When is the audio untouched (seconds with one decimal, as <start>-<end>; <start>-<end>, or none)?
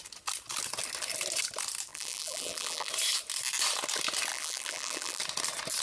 0.0-1.9; 2.9-4.3; 5.2-5.8